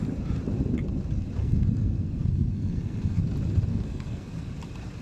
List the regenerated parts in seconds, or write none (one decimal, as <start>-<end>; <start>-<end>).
1.4-3.2; 3.7-4.5